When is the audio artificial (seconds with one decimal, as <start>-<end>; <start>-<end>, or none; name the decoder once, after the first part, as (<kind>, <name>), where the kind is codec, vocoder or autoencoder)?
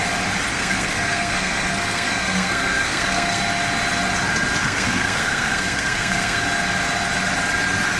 0.5-3.4 (codec, SNAC); 4.6-6.4